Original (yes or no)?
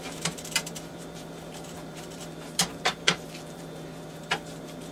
no